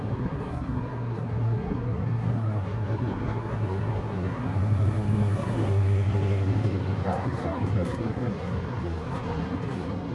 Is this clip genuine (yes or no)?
no